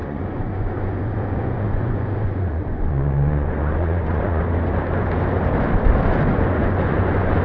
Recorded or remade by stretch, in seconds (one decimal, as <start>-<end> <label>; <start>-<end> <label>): 0.0-4.4 remade; 4.4-6.3 recorded; 6.3-7.4 remade